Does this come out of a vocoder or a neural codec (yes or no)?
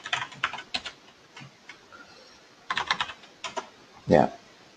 no